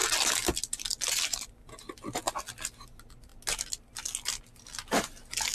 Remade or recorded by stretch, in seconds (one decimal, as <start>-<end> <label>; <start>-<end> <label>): 0.0-5.5 recorded